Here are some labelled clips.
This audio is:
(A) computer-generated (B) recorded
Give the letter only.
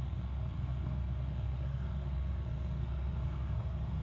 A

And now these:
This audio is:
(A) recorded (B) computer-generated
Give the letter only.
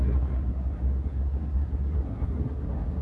B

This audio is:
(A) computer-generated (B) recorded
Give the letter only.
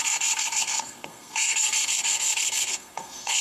A